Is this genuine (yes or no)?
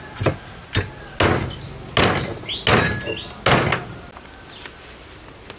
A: yes